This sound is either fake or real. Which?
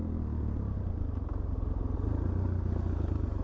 real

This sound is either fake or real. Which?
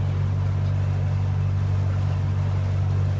real